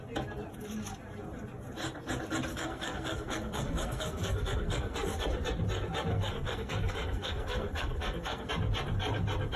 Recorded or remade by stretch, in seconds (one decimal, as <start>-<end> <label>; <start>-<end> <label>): 0.0-2.5 recorded; 2.5-5.1 remade; 5.1-6.1 recorded; 6.1-8.5 remade; 8.5-9.6 recorded